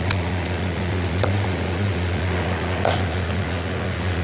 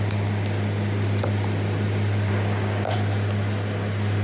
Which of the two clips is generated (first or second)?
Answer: first